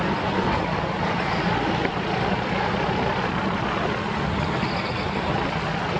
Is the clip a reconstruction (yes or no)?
no